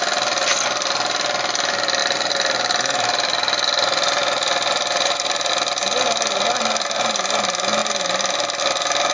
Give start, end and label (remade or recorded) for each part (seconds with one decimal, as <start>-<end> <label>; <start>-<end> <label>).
0.0-2.0 recorded; 2.0-5.5 remade; 5.5-9.1 recorded